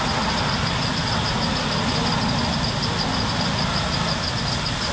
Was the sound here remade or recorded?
recorded